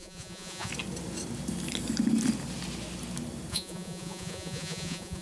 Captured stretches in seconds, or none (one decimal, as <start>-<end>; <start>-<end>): 0.7-3.5